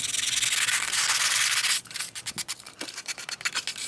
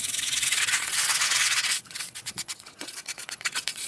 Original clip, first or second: first